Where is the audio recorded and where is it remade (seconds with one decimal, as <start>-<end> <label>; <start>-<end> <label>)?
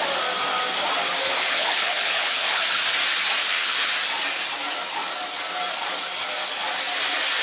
0.0-1.2 recorded; 1.2-2.8 remade; 2.8-3.4 recorded; 3.4-3.9 remade; 3.9-7.4 recorded